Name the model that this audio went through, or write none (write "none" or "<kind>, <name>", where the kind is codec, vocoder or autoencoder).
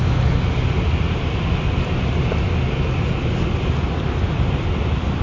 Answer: none